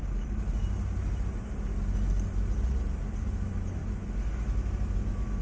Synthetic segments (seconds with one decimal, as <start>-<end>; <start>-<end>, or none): 3.2-5.4

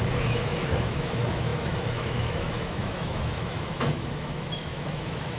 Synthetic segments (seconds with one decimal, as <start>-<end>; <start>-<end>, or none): 0.0-5.4